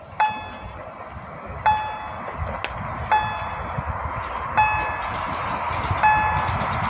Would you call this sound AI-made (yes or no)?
no